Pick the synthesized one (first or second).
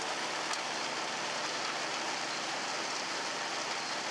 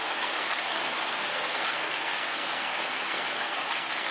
second